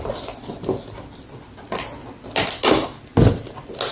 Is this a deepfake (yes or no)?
no